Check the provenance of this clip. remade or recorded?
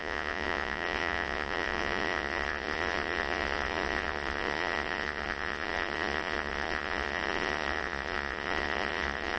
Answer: remade